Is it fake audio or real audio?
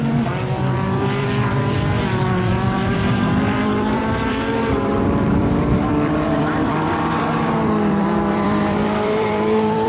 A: fake